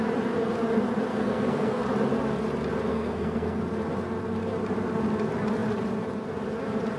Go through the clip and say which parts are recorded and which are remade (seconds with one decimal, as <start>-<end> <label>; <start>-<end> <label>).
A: 0.0-1.1 recorded; 1.1-1.8 remade; 1.8-2.9 recorded; 2.9-3.6 remade; 3.6-7.0 recorded